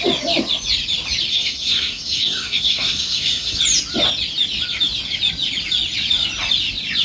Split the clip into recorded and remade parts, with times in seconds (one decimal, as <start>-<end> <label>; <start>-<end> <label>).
0.0-1.3 recorded; 1.3-3.6 remade; 3.6-7.0 recorded